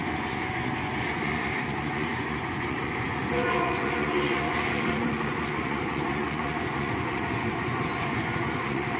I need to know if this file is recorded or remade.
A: remade